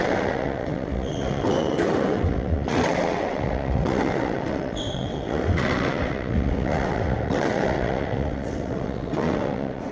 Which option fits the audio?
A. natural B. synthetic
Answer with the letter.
B